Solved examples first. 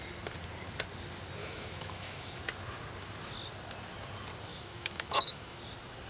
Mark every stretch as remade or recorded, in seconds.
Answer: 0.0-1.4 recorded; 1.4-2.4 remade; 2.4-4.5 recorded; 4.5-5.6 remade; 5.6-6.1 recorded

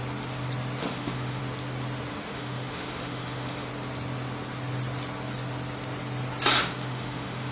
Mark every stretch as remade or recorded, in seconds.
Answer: 0.0-0.8 recorded; 0.8-1.4 remade; 1.4-2.1 recorded; 2.1-3.7 remade; 3.7-6.6 recorded; 6.6-7.5 remade

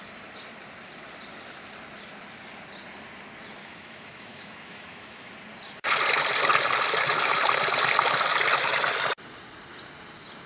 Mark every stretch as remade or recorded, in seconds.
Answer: 0.0-3.6 recorded; 3.6-5.3 remade; 5.3-10.5 recorded

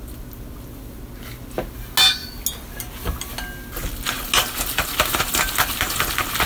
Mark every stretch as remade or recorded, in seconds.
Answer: 0.0-6.5 recorded

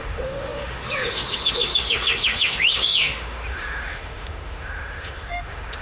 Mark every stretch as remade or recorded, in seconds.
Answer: 0.0-5.8 remade

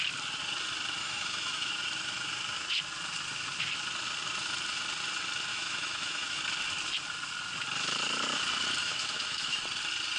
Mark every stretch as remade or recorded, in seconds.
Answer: 0.0-1.0 recorded; 1.0-1.7 remade; 1.7-5.5 recorded; 5.5-6.4 remade; 6.4-8.8 recorded; 8.8-9.6 remade; 9.6-10.2 recorded

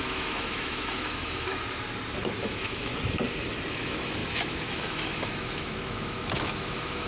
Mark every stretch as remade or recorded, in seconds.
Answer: 0.0-1.5 remade; 1.5-2.4 recorded; 2.4-2.9 remade; 2.9-3.7 recorded; 3.7-7.1 remade